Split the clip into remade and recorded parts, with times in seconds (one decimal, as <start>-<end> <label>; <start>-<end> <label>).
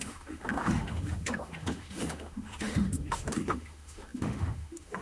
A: 0.0-5.0 remade